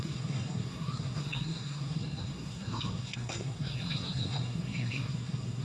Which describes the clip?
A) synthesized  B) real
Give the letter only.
A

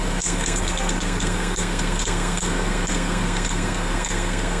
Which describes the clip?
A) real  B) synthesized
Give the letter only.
B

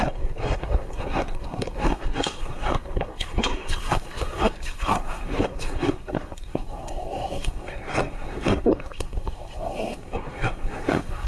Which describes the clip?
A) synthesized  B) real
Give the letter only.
A